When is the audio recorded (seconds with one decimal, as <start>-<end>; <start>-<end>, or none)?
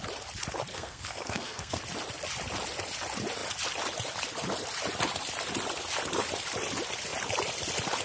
0.0-0.7; 1.8-8.0